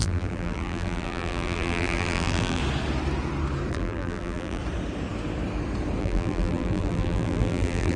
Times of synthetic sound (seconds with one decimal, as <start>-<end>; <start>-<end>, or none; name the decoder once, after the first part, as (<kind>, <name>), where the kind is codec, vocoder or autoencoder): 0.0-2.6 (vocoder, BigVGAN v2); 3.7-4.6; 6.0-8.0